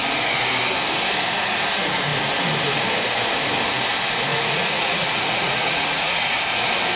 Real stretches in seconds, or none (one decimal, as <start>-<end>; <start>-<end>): 0.0-4.3; 6.4-7.0